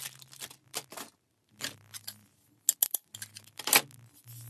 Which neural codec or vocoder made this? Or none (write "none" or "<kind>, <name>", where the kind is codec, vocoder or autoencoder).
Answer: none